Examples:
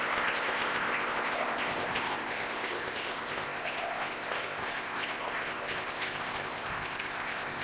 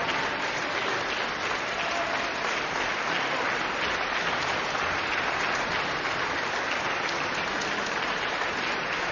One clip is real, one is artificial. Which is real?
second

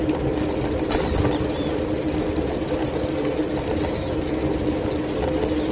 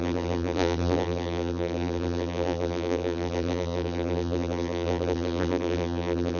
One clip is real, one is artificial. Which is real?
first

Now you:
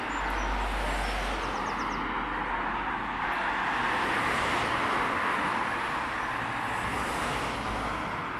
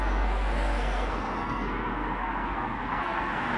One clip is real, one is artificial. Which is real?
first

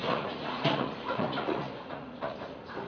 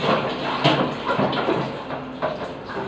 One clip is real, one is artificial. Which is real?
second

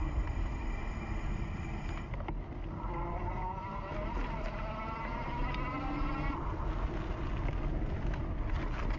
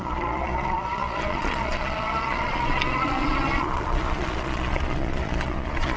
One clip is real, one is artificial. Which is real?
first